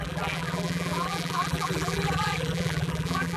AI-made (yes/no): yes